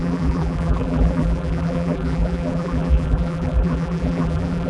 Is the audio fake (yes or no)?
yes